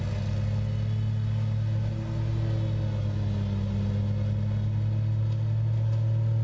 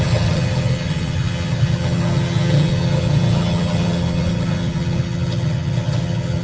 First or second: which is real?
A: first